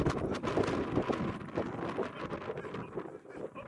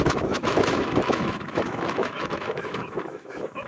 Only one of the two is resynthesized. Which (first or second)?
second